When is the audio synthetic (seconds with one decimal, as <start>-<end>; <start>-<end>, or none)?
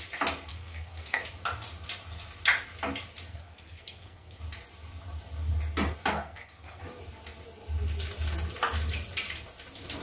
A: 0.5-1.2; 3.3-4.4; 6.1-6.8